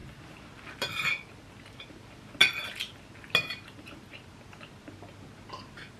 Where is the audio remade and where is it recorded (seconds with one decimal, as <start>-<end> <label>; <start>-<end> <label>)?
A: 0.0-6.0 recorded